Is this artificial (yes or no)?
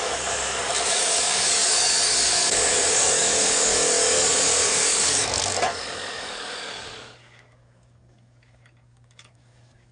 yes